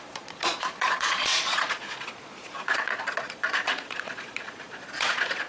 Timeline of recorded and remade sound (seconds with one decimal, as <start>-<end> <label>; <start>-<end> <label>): 0.0-5.5 remade